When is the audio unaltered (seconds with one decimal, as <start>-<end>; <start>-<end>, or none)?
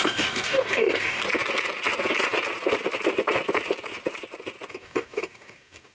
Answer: 1.2-4.7